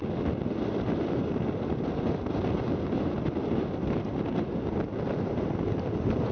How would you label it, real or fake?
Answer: real